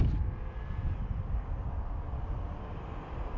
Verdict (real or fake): real